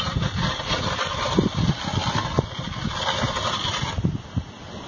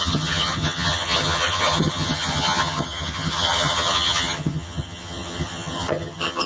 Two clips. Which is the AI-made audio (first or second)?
second